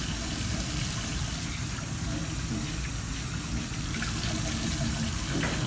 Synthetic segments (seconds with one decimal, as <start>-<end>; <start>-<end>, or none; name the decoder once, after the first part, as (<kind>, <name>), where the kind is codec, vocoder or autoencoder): none